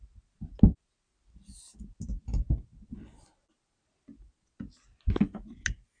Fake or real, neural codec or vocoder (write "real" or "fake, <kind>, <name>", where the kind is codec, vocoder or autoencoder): real